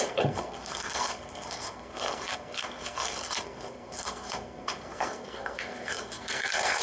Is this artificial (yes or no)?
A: yes